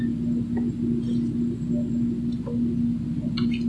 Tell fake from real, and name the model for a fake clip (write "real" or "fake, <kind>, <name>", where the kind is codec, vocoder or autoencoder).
real